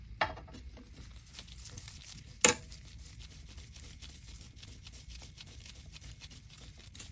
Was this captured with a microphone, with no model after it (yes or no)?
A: yes